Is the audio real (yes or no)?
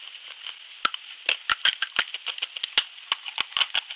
yes